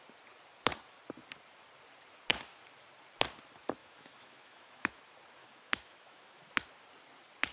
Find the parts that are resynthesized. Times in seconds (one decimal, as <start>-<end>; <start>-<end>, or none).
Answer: 3.8-5.0; 5.4-6.5